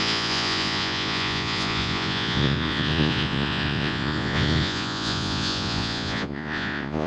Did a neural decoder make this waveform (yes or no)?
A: yes